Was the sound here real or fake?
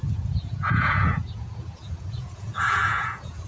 fake